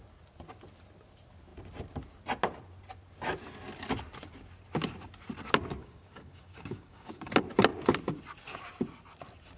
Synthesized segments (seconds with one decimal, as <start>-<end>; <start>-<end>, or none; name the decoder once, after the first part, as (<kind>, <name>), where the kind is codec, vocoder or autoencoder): 5.8-7.3 (codec, DAC)